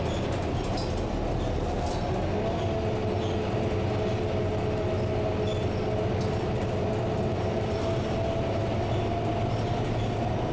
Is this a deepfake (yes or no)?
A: no